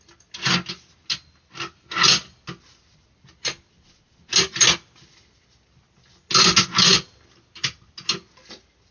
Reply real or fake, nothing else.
real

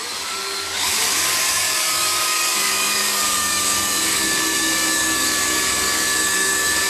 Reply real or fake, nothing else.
fake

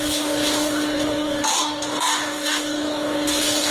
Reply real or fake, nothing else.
fake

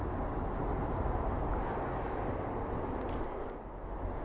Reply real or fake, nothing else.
real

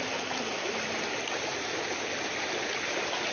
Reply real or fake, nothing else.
real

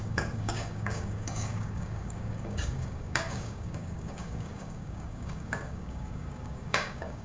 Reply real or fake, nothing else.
fake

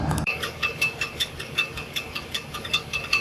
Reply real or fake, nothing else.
fake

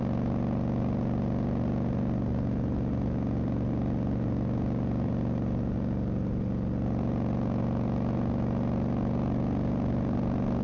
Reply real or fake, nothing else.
real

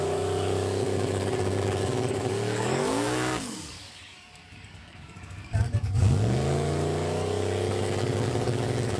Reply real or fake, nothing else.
fake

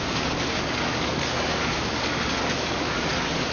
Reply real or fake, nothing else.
fake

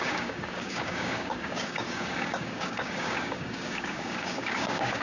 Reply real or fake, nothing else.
fake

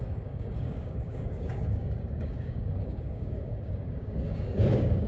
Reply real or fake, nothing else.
fake